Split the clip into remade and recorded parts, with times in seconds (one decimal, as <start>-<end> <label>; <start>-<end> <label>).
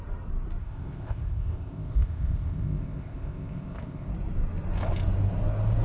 0.0-0.6 recorded; 0.6-4.1 remade; 4.1-5.8 recorded